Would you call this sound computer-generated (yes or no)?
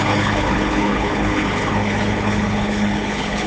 yes